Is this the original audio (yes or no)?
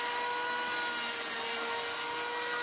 yes